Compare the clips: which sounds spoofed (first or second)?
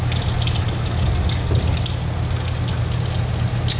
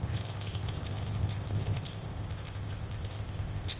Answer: second